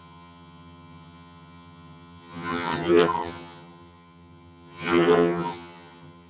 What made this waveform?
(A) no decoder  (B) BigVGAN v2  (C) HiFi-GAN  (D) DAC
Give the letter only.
C